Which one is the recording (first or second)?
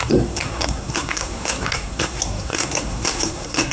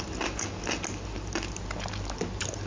second